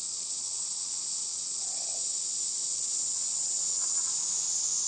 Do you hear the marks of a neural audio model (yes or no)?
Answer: no